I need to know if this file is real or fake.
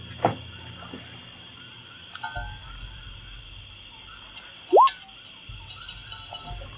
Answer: real